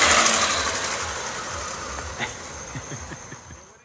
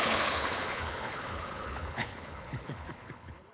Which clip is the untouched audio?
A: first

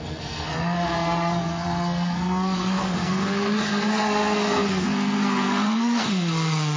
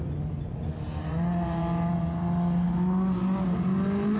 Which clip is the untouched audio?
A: second